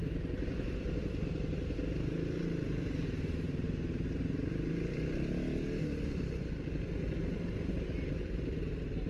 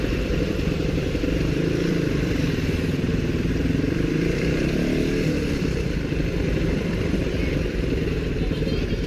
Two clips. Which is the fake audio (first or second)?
second